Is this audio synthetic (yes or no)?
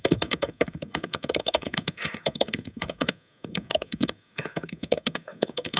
yes